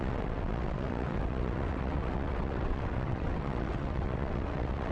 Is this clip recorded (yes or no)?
no